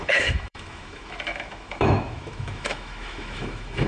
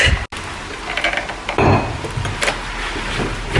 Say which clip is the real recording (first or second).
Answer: second